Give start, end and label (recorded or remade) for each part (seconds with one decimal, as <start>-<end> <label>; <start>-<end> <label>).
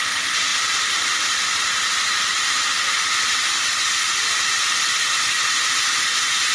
0.0-0.5 recorded; 0.5-1.9 remade; 1.9-4.0 recorded; 4.0-4.6 remade; 4.6-6.5 recorded